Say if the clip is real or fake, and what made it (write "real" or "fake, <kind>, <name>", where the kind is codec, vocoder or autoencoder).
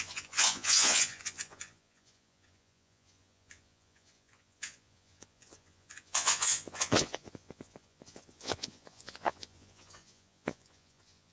fake, vocoder, Vocos